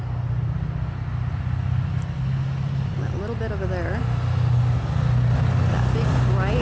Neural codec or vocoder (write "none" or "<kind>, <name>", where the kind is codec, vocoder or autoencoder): none